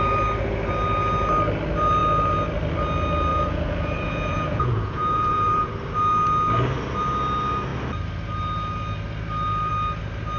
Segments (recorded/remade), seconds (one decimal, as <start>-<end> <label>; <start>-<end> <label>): 0.0-3.3 recorded; 3.3-5.7 remade; 5.7-10.4 recorded